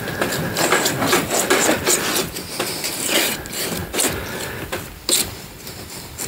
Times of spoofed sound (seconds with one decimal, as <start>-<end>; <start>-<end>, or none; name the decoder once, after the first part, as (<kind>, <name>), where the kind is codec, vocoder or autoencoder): none